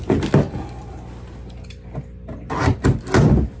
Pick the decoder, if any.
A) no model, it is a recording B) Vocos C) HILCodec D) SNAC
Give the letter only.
A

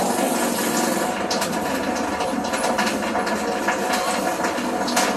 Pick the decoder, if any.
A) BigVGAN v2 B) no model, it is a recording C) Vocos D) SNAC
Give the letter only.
B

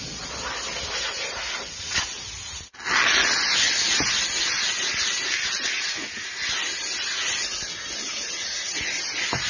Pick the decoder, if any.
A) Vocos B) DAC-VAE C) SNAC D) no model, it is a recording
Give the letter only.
D